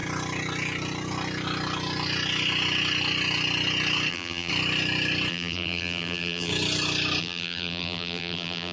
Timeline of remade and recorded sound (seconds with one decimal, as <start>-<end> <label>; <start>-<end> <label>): 0.0-4.1 recorded; 4.1-4.5 remade; 4.5-5.3 recorded; 5.3-6.5 remade; 6.5-7.2 recorded; 7.2-8.7 remade